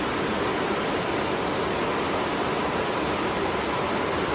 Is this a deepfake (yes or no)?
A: no